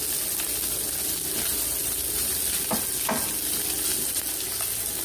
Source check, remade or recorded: recorded